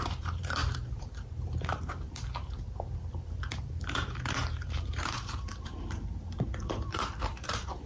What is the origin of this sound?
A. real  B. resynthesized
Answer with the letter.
B